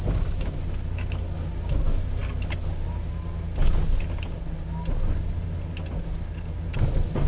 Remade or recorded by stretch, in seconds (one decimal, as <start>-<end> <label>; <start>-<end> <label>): 0.0-7.3 recorded